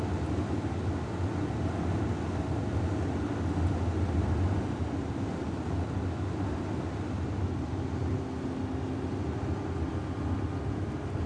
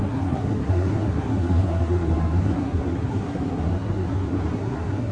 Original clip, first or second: first